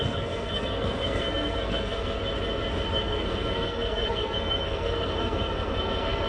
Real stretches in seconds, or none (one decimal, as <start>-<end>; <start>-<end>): 2.2-2.9